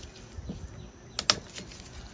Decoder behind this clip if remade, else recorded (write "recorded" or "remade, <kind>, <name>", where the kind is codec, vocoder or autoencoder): recorded